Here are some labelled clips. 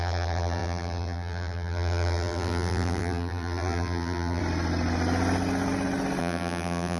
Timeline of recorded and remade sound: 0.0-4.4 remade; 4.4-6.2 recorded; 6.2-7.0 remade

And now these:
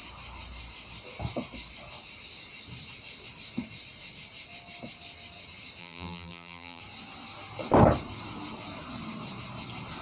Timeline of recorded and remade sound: 0.0-5.8 recorded; 5.8-6.8 remade; 6.8-10.0 recorded